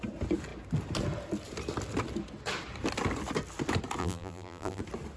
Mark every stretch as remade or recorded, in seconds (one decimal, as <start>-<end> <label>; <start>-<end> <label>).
0.0-4.0 recorded; 4.0-4.8 remade; 4.8-5.2 recorded